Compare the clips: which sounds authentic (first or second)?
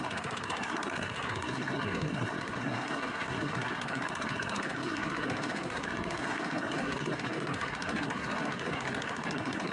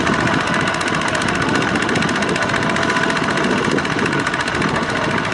second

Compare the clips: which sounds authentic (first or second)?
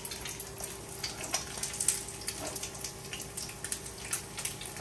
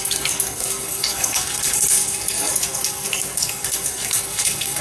first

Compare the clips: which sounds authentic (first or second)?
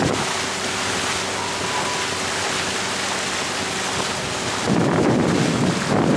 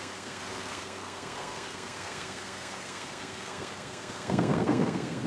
first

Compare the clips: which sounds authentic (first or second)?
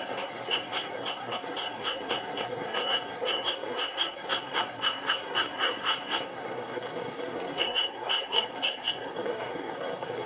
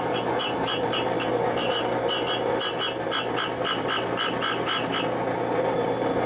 second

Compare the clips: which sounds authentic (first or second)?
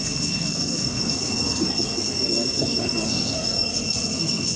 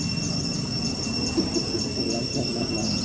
second